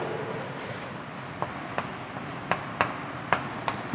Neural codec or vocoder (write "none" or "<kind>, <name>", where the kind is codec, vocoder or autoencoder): none